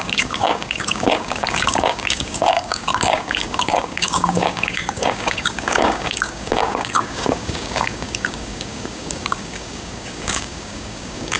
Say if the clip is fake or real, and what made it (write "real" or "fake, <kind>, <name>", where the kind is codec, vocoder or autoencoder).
fake, codec, DAC